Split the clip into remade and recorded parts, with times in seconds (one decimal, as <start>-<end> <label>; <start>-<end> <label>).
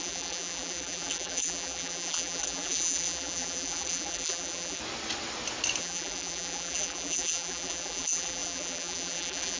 0.0-4.8 remade; 4.8-5.8 recorded; 5.8-9.6 remade